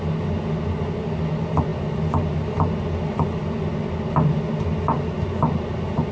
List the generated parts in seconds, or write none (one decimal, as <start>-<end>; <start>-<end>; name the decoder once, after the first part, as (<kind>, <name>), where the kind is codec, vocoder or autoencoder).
none